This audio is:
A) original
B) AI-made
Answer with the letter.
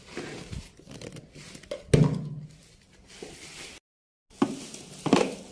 A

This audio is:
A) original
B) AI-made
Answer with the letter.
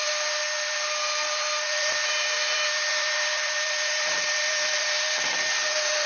B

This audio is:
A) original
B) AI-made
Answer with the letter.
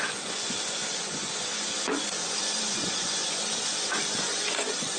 B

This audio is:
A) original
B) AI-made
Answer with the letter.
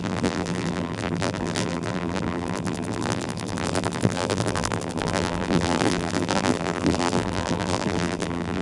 B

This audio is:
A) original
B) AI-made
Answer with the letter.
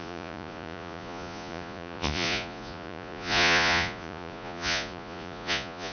B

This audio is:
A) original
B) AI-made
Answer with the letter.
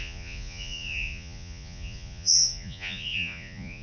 B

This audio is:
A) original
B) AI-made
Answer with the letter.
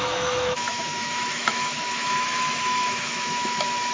B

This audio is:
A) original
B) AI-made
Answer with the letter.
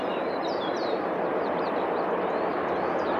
B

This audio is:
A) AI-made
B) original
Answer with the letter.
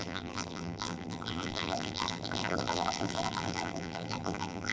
A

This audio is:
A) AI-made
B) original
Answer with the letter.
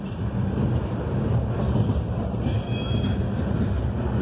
B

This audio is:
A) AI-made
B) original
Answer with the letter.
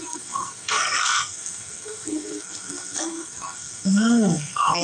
A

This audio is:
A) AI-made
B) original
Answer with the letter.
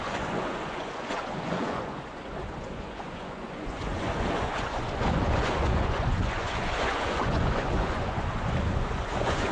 A